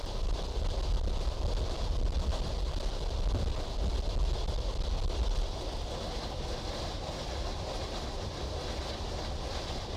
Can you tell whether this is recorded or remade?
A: recorded